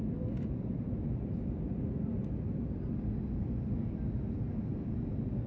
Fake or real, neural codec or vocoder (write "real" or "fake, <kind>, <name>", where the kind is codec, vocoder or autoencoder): real